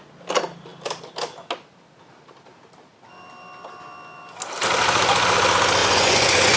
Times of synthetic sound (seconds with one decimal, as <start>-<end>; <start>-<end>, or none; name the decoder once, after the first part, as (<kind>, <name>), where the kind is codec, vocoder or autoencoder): 5.8-6.6 (vocoder, Vocos)